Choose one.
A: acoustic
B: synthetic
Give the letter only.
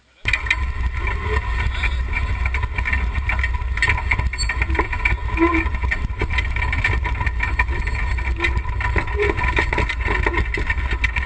A